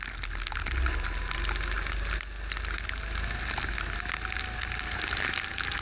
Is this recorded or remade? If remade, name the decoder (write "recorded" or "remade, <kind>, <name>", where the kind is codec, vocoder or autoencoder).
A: recorded